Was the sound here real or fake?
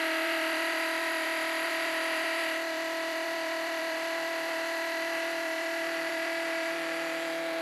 fake